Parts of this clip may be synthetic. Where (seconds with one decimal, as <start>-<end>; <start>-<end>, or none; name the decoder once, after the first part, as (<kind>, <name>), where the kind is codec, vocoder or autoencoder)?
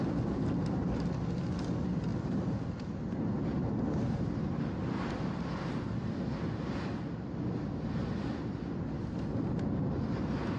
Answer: none